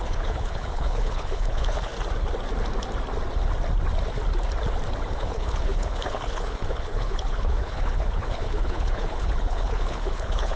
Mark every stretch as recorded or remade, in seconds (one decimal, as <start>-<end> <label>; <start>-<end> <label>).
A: 0.0-1.9 remade; 1.9-5.1 recorded; 5.1-10.6 remade